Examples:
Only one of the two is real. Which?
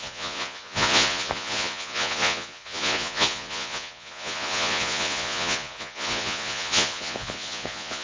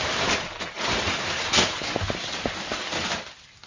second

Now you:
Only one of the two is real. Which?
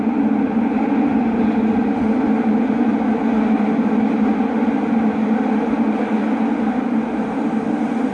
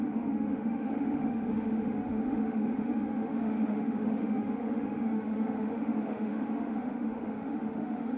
first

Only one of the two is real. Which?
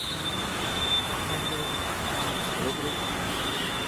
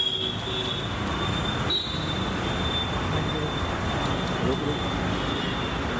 second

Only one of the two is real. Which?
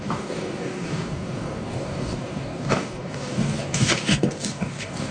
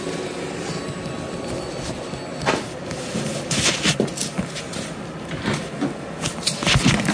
second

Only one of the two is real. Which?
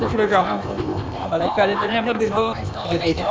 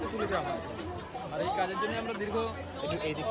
second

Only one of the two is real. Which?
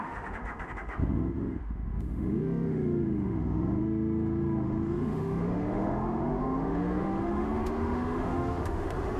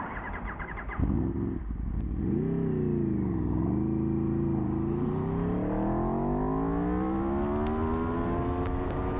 second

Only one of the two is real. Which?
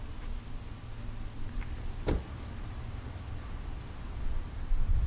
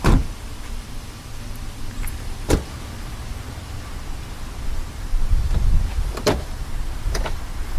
first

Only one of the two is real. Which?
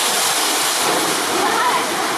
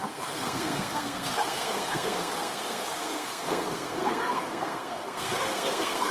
first